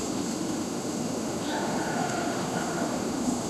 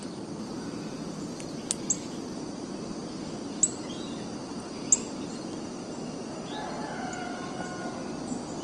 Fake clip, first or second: first